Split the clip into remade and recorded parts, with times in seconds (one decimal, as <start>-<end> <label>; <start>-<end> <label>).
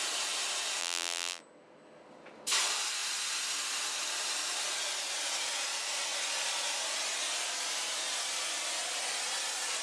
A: 0.0-0.8 recorded; 0.8-1.4 remade; 1.4-9.8 recorded